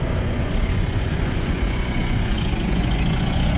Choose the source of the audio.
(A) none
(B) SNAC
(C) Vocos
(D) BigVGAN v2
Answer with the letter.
C